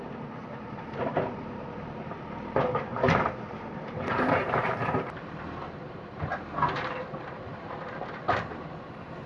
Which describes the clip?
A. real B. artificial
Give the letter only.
B